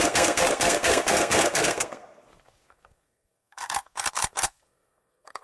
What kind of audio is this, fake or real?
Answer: fake